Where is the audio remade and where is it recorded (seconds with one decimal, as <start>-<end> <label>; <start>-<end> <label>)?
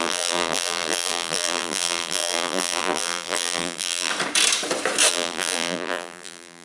0.0-4.1 remade; 4.1-5.1 recorded; 5.1-6.6 remade